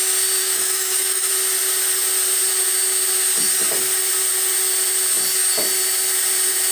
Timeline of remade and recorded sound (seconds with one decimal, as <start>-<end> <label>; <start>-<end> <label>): 0.0-0.4 recorded; 0.4-1.3 remade; 1.3-6.7 recorded